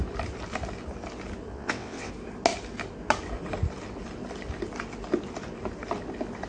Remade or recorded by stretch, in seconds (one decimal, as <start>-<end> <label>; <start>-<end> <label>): 0.0-1.5 recorded; 1.5-2.1 remade; 2.1-6.5 recorded